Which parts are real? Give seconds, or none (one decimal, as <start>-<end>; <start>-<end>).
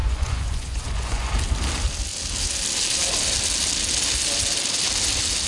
1.3-5.5